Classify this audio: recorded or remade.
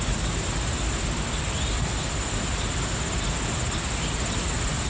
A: recorded